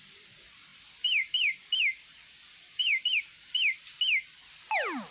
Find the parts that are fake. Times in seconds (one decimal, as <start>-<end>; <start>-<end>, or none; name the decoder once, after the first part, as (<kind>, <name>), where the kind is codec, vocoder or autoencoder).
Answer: 0.7-3.8 (vocoder, BigVGAN v2)